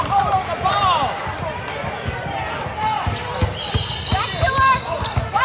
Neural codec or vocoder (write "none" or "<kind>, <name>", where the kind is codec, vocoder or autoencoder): none